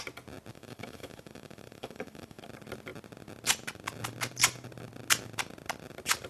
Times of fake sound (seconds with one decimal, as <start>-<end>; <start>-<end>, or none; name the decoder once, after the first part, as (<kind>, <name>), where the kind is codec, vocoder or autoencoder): 0.5-2.4 (autoencoder, DAC-VAE)